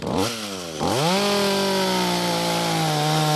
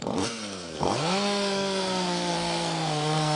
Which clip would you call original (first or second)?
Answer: first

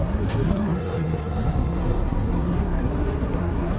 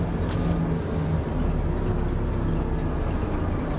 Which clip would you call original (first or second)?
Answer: second